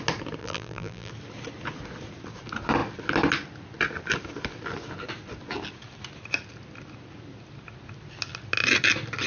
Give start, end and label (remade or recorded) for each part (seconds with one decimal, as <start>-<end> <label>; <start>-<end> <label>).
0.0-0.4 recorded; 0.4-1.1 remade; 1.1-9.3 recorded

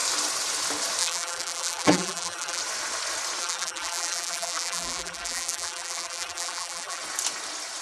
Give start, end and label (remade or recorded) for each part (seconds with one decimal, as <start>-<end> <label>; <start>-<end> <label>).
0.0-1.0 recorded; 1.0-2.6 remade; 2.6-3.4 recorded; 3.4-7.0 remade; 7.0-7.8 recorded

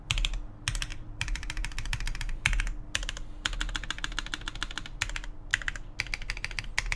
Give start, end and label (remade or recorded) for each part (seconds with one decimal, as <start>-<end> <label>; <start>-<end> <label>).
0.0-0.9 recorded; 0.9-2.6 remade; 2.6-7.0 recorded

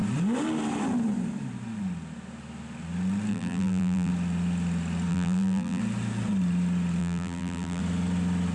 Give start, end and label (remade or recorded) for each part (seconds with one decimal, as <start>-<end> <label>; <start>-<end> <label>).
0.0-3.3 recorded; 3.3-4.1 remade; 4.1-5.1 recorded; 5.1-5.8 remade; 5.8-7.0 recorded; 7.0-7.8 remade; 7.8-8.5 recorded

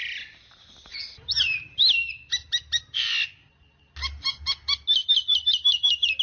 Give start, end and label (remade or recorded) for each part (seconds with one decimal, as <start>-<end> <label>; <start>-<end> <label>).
0.0-0.9 recorded; 0.9-3.1 remade; 3.1-5.0 recorded; 5.0-6.2 remade

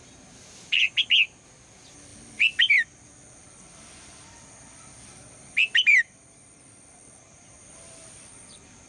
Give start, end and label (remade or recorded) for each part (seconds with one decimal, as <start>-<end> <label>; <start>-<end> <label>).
0.0-3.5 recorded; 3.5-8.9 remade

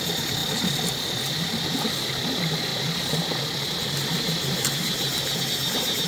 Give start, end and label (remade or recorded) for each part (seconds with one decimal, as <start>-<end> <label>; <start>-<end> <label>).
0.0-6.1 recorded